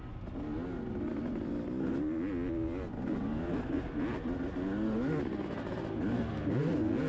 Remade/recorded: recorded